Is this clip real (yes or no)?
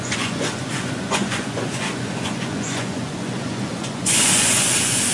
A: no